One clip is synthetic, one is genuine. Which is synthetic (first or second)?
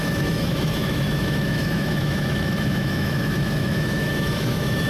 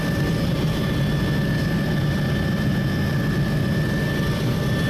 first